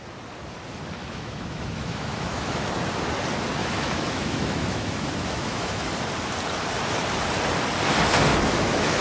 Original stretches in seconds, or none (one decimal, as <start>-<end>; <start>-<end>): 0.0-1.0; 2.7-3.6; 5.9-8.3